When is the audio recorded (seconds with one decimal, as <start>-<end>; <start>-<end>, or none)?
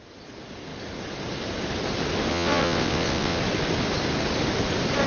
0.0-2.3; 3.4-5.1